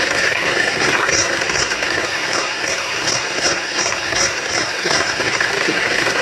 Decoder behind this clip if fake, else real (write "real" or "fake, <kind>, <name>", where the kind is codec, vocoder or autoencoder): fake, codec, SNAC